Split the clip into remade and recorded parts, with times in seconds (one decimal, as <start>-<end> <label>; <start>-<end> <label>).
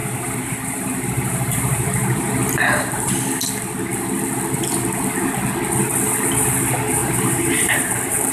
0.0-3.1 remade; 3.1-7.0 recorded; 7.0-7.9 remade; 7.9-8.3 recorded